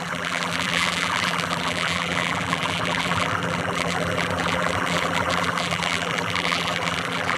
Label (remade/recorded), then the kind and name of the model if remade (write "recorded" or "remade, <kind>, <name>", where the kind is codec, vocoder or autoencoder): remade, vocoder, BigVGAN v2